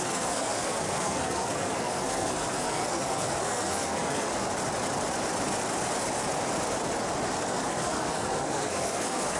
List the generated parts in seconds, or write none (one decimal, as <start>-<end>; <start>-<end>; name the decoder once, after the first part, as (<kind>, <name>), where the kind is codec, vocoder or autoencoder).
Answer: 0.0-4.3 (codec, SNAC); 7.5-9.4